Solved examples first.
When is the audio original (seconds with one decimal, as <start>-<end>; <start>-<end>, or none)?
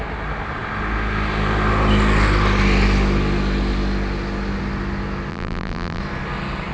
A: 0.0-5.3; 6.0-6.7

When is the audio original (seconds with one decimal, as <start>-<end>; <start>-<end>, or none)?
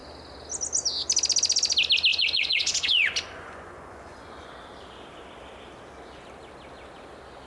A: 0.0-2.1; 4.5-7.5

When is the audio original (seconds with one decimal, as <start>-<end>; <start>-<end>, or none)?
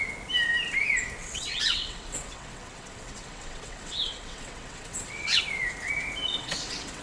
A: 0.0-1.2; 5.4-6.3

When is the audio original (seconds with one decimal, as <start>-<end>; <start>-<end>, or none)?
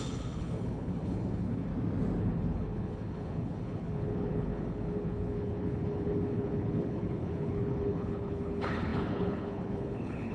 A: 1.7-2.2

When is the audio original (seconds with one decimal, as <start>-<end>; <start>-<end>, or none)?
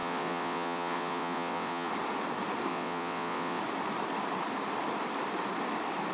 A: 1.9-2.7; 3.6-6.1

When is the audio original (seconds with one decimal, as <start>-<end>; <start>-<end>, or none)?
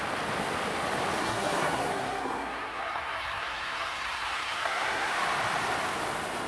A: 0.0-1.2; 5.1-6.5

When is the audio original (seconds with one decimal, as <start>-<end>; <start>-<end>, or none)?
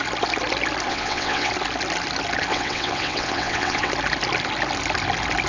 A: 0.0-0.9; 1.5-2.5; 3.9-5.5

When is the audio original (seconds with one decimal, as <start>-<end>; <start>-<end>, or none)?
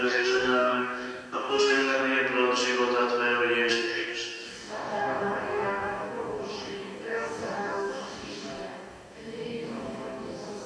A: 2.0-3.7